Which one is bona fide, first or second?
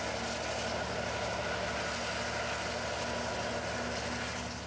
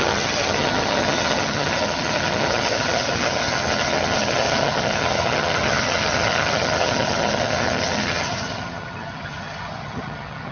first